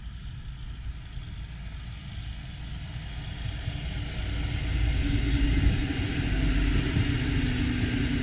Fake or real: real